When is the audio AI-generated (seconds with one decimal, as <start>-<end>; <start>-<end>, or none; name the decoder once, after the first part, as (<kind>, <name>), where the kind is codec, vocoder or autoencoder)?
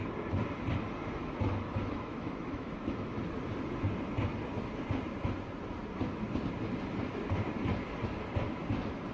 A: 1.2-3.2 (autoencoder, DAC-VAE)